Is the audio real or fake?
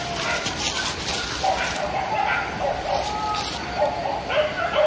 real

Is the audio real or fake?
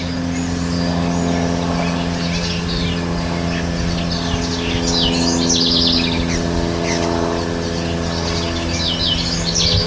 real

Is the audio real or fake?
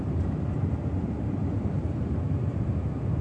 fake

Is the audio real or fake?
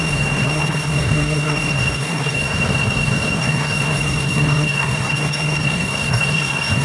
fake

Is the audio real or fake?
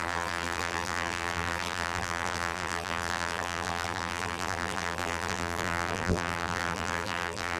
fake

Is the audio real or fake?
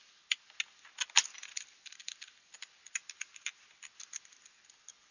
real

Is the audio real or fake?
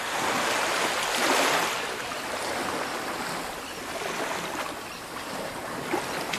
real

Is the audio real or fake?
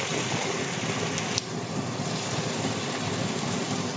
real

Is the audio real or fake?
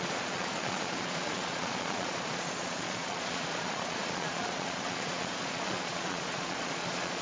fake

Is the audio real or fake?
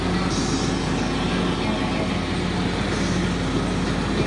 real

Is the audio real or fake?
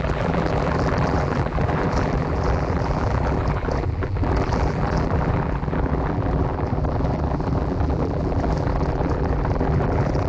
fake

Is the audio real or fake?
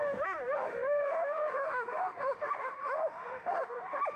fake